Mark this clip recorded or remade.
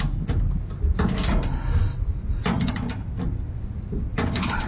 recorded